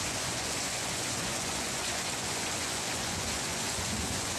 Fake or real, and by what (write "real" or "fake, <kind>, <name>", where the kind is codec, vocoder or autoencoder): fake, vocoder, Vocos